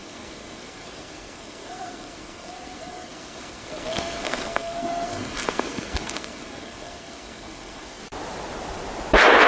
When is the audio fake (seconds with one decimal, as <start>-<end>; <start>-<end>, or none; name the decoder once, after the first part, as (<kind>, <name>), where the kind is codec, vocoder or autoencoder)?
0.0-8.0 (codec, SNAC)